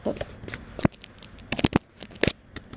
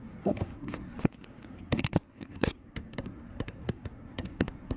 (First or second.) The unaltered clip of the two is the first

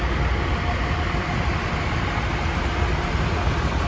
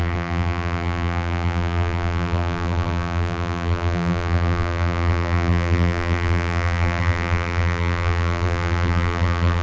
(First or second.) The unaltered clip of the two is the first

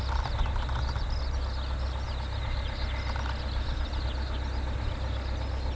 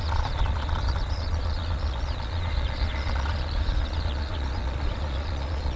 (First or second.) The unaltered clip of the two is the first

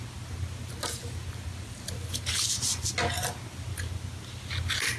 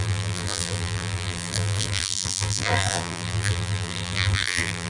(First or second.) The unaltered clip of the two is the first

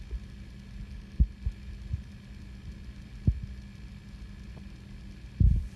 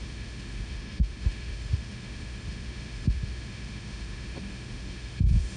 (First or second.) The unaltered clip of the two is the first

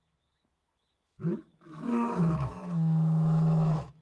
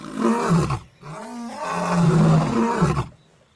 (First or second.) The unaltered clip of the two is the second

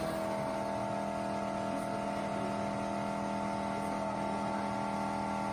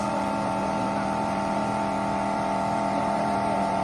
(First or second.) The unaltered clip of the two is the first